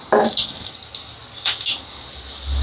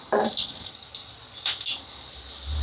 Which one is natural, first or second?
first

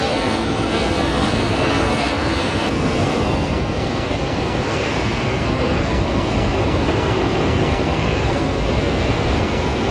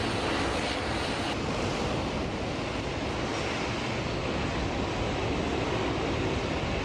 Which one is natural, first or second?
second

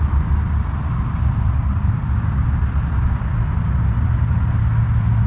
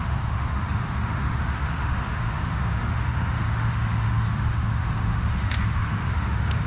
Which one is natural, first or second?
first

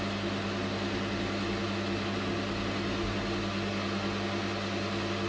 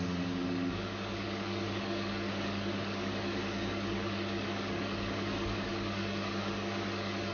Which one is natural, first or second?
first